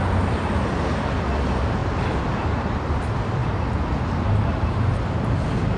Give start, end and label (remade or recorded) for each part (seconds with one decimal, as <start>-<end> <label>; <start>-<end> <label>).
0.0-5.8 recorded